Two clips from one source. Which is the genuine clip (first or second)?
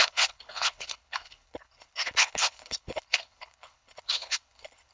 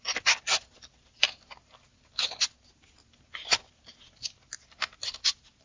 second